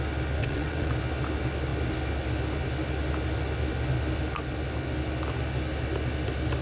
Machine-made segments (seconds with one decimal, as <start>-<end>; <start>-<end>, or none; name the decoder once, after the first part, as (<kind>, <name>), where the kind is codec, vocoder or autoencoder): 0.4-0.9 (vocoder, WaveNeXt)